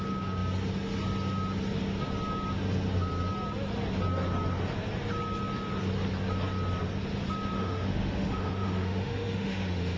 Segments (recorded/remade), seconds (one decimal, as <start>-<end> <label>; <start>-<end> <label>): 0.0-7.6 recorded; 7.6-10.0 remade